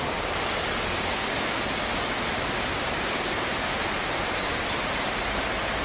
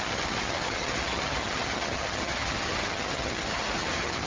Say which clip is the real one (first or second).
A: first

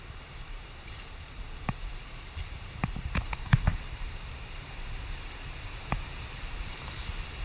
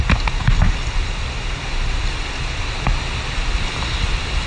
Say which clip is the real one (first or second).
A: second